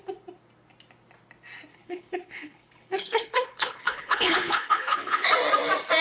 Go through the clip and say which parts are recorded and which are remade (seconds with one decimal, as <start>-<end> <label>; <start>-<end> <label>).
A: 0.0-1.7 recorded; 1.7-5.3 remade; 5.3-6.0 recorded